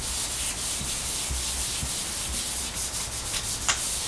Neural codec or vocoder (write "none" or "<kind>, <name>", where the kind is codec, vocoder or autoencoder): none